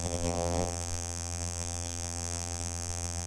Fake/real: fake